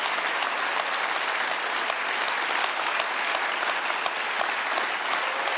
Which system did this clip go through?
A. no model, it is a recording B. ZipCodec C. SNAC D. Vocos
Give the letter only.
A